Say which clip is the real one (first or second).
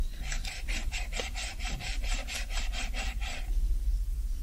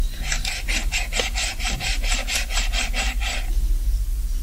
second